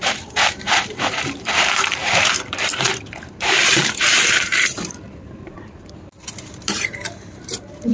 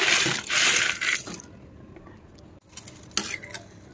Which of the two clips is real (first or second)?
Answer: second